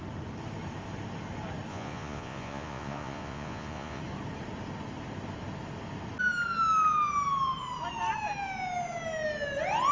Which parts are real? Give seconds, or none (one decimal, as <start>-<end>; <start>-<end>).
0.0-1.7; 4.0-9.9